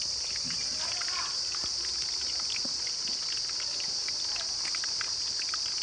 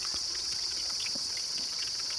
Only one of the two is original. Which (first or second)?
first